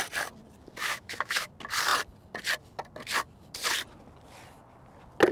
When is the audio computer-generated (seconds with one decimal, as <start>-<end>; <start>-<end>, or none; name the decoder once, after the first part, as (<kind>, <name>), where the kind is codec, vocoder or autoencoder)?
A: 0.8-1.5 (autoencoder, DAC-VAE)